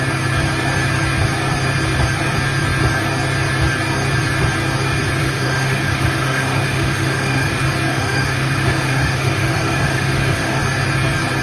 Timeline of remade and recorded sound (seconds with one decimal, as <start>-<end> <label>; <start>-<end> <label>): 0.0-5.2 recorded; 5.2-7.5 remade; 7.5-7.9 recorded; 7.9-10.6 remade; 10.6-11.4 recorded